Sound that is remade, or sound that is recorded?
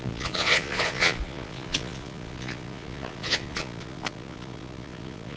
remade